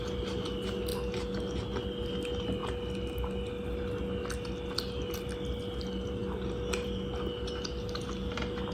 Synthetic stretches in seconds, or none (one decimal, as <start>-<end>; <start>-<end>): none